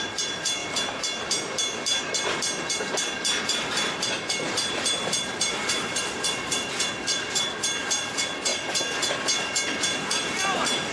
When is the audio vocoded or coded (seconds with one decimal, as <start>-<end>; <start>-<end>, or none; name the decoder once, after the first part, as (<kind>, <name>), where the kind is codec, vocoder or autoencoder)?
0.0-0.6 (vocoder, BigVGAN v2); 3.4-10.9